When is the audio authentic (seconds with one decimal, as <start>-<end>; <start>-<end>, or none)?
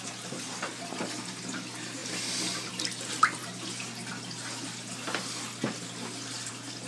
0.0-2.0; 2.7-3.4; 6.5-6.9